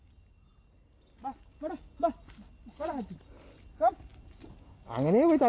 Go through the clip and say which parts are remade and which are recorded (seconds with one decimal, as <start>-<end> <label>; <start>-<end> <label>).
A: 0.0-5.5 recorded